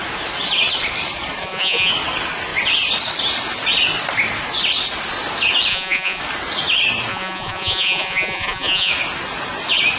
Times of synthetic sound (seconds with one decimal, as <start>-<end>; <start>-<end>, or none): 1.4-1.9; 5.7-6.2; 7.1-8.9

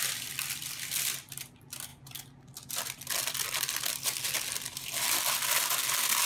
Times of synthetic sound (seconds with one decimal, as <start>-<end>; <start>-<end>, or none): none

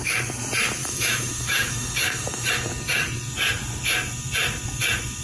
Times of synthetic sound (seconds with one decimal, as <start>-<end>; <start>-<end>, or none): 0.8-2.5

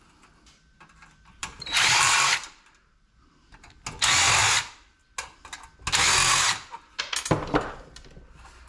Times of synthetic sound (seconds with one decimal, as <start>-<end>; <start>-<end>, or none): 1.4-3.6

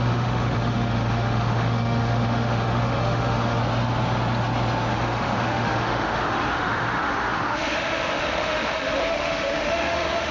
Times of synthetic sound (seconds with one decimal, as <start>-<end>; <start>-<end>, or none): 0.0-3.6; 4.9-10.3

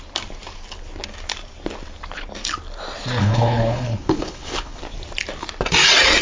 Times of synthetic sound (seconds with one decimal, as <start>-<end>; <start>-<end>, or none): 3.2-4.8

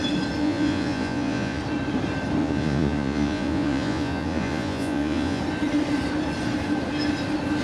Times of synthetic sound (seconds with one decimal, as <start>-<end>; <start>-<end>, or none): 0.4-1.6; 2.4-5.4

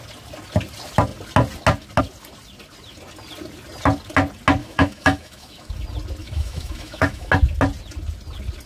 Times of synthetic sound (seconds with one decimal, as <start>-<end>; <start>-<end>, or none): 4.6-5.7; 6.2-7.3